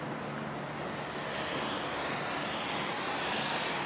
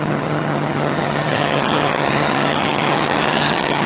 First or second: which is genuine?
first